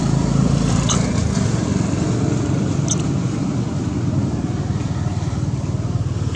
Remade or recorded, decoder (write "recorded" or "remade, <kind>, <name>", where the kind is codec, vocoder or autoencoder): recorded